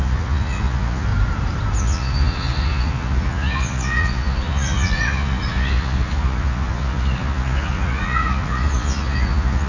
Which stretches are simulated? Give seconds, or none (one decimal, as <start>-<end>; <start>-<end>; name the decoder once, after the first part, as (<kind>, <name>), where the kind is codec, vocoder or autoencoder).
0.0-1.1 (vocoder, Vocos); 1.8-9.7